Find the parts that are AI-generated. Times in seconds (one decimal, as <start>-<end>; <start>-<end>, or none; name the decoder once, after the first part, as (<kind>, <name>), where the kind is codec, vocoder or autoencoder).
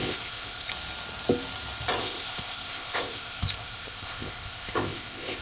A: 0.0-0.7 (codec, ZipCodec); 2.0-5.4